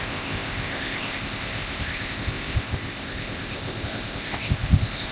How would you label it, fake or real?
fake